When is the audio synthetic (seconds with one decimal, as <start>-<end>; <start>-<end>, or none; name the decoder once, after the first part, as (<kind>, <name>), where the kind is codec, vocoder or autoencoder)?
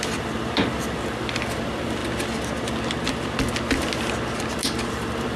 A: 0.0-2.0 (vocoder, BigVGAN v2); 4.9-5.4